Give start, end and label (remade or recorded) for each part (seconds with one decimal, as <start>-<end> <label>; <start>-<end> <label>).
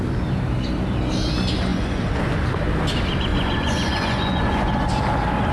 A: 0.0-1.7 recorded; 1.7-2.2 remade; 2.2-3.3 recorded; 3.3-4.9 remade; 4.9-5.5 recorded